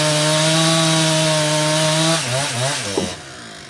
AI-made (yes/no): no